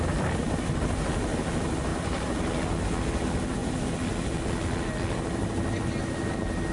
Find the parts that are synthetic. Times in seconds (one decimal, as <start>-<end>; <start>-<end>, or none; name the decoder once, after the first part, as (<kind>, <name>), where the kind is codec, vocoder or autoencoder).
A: 1.9-2.4 (vocoder, BigVGAN v2)